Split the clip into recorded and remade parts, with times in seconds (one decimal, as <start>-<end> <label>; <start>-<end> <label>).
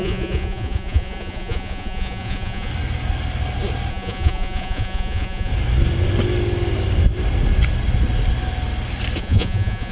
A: 0.0-2.7 remade; 2.7-3.9 recorded; 3.9-5.5 remade; 5.5-9.2 recorded; 9.2-9.9 remade